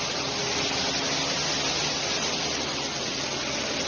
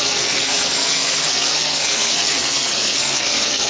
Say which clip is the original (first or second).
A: first